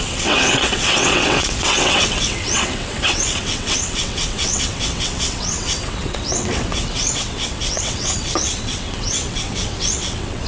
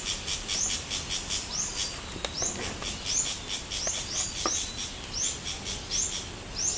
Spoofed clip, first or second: first